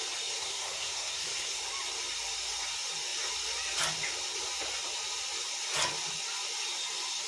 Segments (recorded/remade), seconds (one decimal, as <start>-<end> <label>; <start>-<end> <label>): 0.0-0.4 recorded; 0.4-1.6 remade; 1.6-7.3 recorded